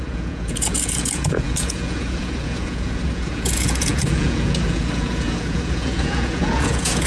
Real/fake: fake